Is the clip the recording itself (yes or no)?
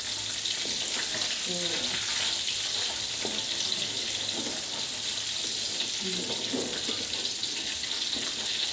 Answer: yes